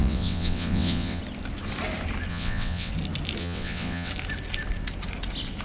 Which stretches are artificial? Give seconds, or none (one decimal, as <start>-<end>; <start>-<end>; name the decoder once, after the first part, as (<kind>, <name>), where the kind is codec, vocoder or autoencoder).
0.0-1.2 (vocoder, WaveNeXt); 2.3-2.9; 3.4-4.1